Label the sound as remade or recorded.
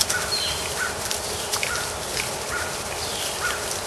recorded